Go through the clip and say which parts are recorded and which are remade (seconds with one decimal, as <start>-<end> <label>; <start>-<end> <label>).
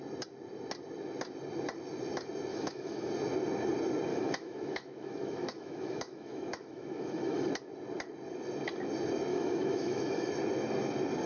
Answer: 0.0-2.5 recorded; 2.5-3.1 remade; 3.1-4.1 recorded; 4.1-7.5 remade; 7.5-9.3 recorded; 9.3-10.3 remade; 10.3-11.3 recorded